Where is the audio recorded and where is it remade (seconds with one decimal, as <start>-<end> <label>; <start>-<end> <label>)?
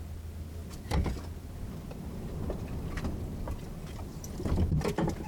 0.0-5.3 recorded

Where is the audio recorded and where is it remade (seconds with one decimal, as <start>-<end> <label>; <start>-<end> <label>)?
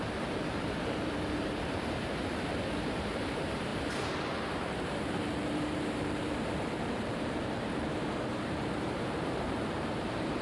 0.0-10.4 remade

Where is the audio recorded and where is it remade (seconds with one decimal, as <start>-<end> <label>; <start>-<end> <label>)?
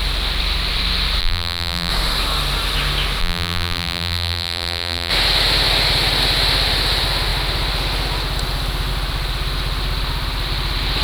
0.0-1.2 recorded; 1.2-1.9 remade; 1.9-3.2 recorded; 3.2-5.1 remade; 5.1-11.0 recorded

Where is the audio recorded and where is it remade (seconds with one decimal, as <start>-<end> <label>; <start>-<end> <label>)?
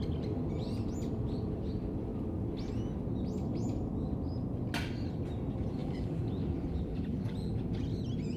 0.0-5.8 recorded; 5.8-7.5 remade; 7.5-8.4 recorded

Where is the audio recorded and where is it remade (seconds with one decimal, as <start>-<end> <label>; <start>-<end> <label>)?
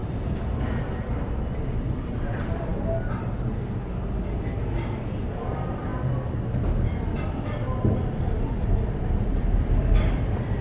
0.0-2.7 remade; 2.7-5.2 recorded; 5.2-5.9 remade; 5.9-8.4 recorded; 8.4-10.6 remade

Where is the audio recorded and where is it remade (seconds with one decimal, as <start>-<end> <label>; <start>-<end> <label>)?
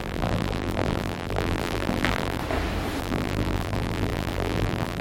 0.0-2.4 remade; 2.4-3.0 recorded; 3.0-5.0 remade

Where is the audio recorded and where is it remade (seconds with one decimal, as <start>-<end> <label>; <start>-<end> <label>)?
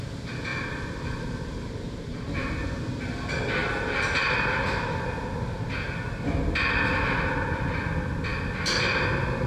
0.0-0.5 recorded; 0.5-2.8 remade; 2.8-3.6 recorded; 3.6-6.1 remade; 6.1-9.5 recorded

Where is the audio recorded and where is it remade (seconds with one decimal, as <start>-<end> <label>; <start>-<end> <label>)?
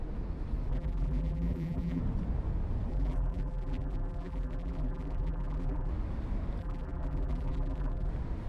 0.0-0.7 recorded; 0.7-2.0 remade; 2.0-2.9 recorded; 2.9-5.9 remade; 5.9-6.6 recorded; 6.6-8.1 remade; 8.1-8.5 recorded